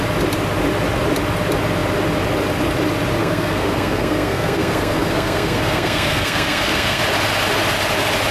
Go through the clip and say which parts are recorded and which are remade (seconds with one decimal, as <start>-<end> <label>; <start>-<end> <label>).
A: 0.0-3.2 recorded; 3.2-7.0 remade; 7.0-8.3 recorded